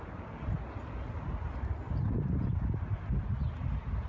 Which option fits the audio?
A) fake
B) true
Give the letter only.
B